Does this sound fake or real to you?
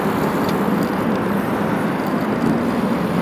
real